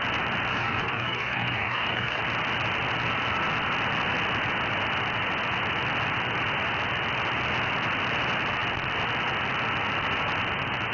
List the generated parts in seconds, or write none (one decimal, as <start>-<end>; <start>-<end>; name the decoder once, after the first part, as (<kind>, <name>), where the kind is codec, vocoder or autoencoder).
0.5-2.2 (codec, DAC)

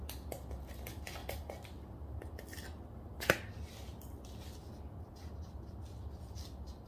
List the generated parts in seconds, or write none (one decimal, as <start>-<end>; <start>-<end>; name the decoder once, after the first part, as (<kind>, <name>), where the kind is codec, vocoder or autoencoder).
none

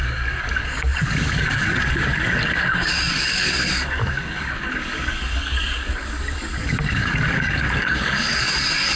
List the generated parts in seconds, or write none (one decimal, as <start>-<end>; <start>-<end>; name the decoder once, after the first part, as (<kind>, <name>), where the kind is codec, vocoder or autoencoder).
0.0-9.0 (codec, DAC)

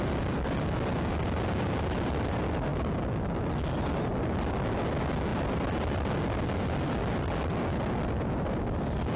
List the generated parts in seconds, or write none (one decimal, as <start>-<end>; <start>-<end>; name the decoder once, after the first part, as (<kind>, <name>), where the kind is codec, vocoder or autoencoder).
none

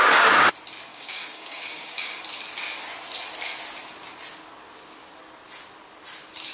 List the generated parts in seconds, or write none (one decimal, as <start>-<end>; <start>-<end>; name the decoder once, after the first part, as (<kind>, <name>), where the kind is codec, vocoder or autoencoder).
0.9-2.2 (codec, DAC)